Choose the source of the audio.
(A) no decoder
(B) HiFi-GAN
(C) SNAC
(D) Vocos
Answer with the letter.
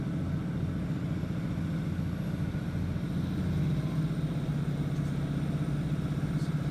A